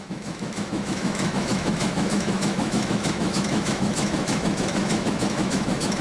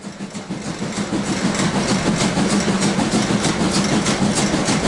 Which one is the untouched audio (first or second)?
second